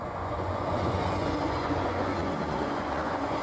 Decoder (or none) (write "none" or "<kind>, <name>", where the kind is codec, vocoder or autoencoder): vocoder, Vocos